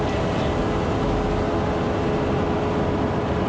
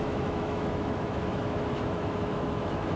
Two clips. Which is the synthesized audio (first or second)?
second